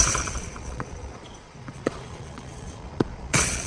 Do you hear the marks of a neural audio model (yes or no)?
yes